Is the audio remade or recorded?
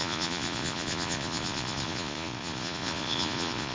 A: remade